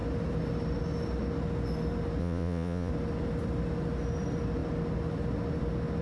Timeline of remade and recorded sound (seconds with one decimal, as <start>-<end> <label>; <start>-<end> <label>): 0.0-2.2 recorded; 2.2-2.9 remade; 2.9-6.0 recorded